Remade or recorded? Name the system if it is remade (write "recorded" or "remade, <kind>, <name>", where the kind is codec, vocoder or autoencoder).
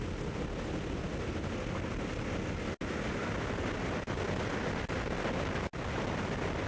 recorded